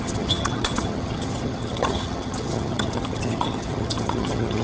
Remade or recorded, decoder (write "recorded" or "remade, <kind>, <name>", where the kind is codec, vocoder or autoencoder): remade, vocoder, HiFi-GAN